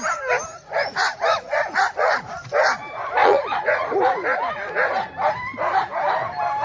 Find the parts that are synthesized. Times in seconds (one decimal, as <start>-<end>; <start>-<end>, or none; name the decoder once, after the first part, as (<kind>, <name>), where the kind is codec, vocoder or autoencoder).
0.5-2.3 (vocoder, Vocos); 3.2-3.9

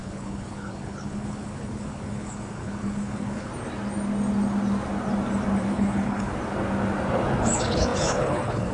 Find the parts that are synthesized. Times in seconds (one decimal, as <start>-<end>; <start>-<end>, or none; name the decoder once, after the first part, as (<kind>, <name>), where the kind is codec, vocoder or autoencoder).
0.0-3.5 (codec, HILCodec); 5.7-6.3; 7.4-8.7

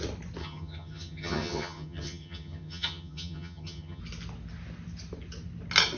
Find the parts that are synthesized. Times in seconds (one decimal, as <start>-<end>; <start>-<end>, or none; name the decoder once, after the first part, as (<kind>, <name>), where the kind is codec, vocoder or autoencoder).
0.4-4.0 (vocoder, HiFi-GAN)